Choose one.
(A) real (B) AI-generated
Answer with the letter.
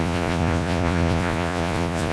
B